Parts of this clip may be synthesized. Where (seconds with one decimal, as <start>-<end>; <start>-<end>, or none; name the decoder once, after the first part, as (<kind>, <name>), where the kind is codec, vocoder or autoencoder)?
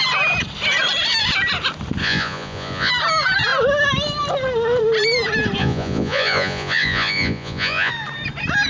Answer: 2.0-2.9 (vocoder, Vocos); 5.6-7.9